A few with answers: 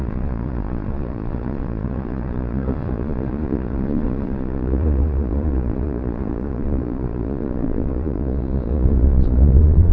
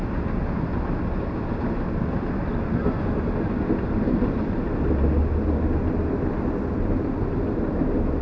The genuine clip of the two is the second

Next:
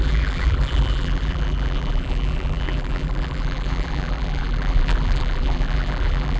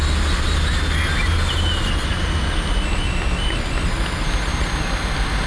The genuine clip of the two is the second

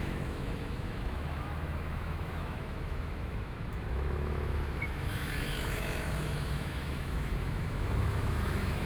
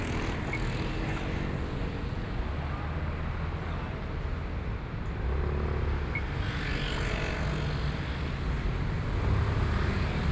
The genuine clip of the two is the second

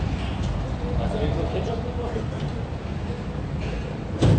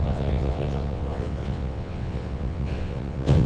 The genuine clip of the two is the first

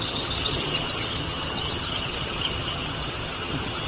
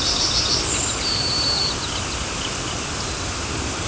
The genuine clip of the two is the second